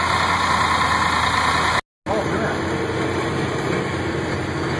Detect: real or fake real